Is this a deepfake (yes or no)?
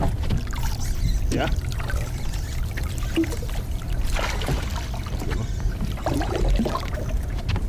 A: no